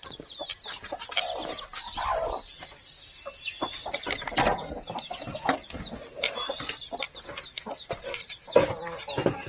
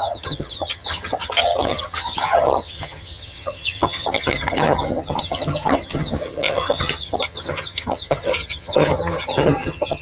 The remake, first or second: second